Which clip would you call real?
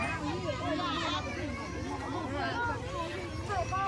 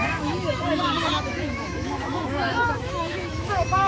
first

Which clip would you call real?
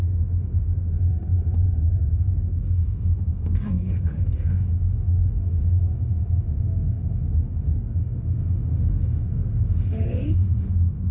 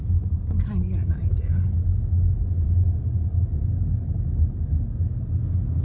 second